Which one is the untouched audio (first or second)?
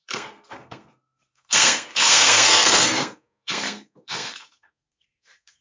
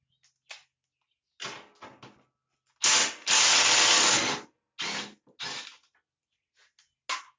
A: second